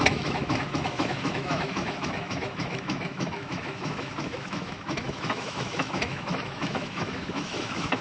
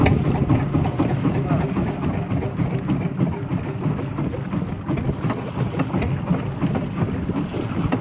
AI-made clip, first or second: first